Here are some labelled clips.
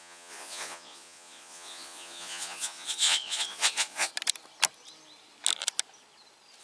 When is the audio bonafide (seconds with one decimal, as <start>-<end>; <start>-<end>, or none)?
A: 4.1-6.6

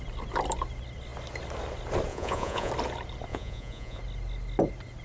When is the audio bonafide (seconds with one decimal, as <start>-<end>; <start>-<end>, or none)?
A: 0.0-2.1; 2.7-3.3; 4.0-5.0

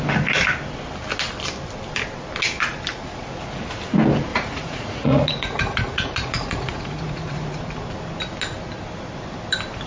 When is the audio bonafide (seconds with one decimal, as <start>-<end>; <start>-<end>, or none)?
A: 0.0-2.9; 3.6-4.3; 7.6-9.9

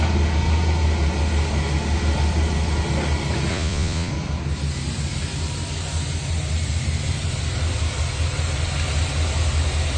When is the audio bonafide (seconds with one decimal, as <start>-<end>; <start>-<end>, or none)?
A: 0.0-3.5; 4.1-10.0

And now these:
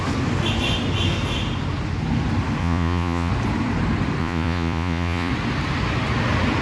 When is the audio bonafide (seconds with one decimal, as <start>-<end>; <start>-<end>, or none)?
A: 0.0-2.6; 3.3-4.2; 5.3-6.6

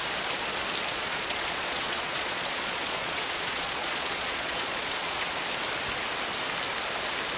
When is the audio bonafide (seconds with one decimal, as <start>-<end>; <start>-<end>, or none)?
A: 0.0-0.9; 5.3-7.4

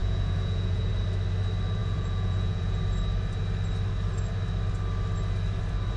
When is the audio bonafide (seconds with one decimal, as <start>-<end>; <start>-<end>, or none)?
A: 0.9-1.8; 2.8-6.0

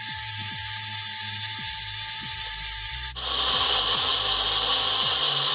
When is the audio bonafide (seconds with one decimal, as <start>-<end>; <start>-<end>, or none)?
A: 0.0-5.5